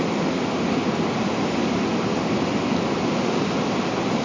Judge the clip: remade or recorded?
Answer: recorded